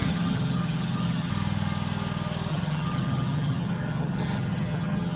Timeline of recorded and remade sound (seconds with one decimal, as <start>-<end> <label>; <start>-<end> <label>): 0.0-1.3 remade; 1.3-2.5 recorded; 2.5-5.2 remade